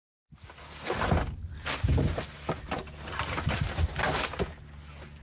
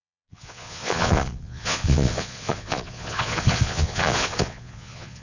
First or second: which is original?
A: first